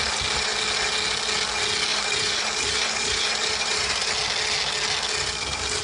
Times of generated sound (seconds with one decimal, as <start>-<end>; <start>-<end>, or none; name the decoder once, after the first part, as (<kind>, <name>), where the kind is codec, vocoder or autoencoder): 1.9-4.1 (vocoder, BigVGAN v2)